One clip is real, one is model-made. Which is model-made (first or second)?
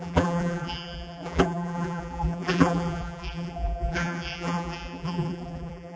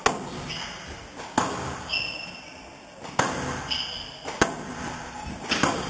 first